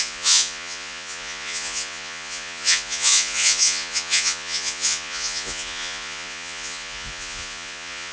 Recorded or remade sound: remade